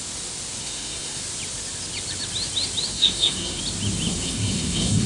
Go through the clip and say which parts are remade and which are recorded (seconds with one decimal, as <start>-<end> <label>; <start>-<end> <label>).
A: 0.0-0.6 recorded; 0.6-1.2 remade; 1.2-2.9 recorded; 2.9-3.6 remade; 3.6-4.1 recorded; 4.1-5.1 remade